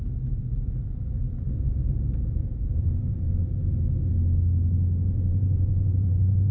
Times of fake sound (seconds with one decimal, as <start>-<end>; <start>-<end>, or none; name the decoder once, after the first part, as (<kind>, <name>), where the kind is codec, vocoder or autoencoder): 0.0-0.8 (vocoder, BigVGAN v2); 2.2-3.6; 5.1-6.5